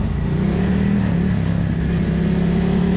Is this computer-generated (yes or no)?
no